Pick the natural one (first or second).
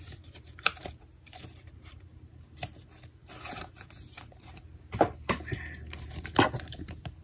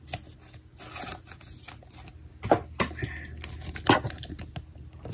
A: second